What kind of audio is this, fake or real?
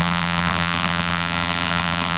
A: fake